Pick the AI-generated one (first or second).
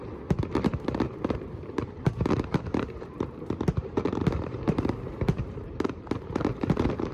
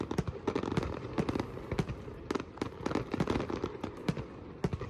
first